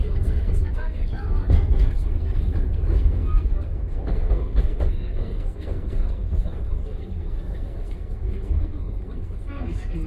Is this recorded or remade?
remade